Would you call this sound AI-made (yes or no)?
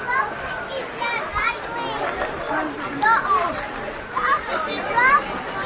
no